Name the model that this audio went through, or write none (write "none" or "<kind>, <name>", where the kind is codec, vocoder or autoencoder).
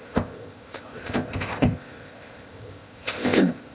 codec, ZipCodec